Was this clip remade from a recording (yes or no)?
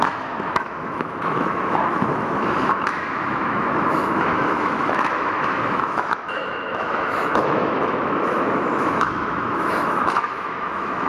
yes